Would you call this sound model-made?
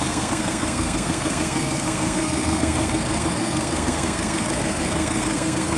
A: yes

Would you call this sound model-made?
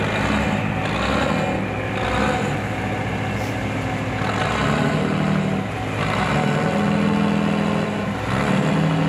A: no